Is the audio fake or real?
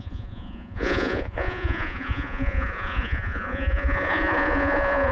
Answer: fake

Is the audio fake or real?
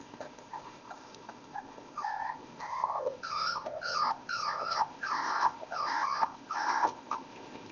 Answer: fake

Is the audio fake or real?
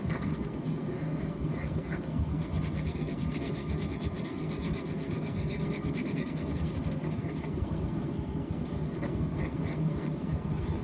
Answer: fake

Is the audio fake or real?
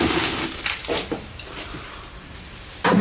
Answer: real